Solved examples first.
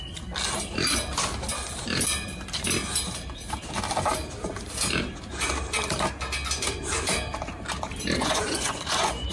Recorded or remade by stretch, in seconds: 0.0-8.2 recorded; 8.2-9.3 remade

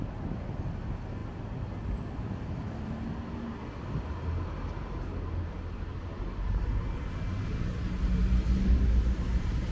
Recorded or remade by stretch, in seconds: 0.0-9.7 recorded

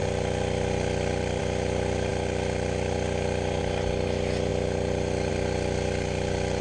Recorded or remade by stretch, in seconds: 0.0-6.6 recorded

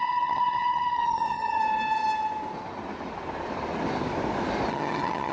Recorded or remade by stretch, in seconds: 0.0-1.6 remade; 1.6-4.7 recorded; 4.7-5.3 remade

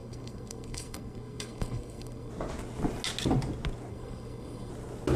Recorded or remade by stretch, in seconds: 0.0-2.3 remade; 2.3-3.9 recorded; 3.9-4.7 remade; 4.7-5.2 recorded

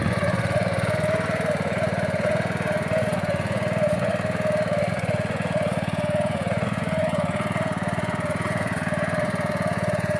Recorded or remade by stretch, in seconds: 0.0-4.1 remade; 4.1-4.9 recorded; 4.9-10.2 remade